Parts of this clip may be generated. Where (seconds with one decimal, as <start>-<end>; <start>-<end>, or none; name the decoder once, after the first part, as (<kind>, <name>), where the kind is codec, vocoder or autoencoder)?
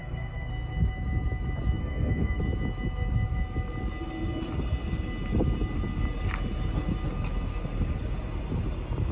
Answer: 0.0-0.5 (codec, SNAC); 1.8-2.4